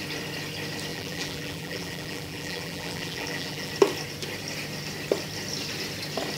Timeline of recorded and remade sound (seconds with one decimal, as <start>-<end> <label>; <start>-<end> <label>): 0.0-0.9 recorded; 0.9-3.7 remade; 3.7-6.4 recorded